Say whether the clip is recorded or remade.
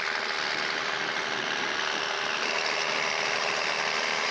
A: recorded